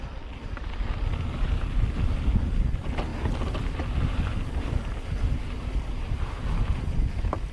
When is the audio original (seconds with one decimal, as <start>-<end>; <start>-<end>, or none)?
0.0-7.5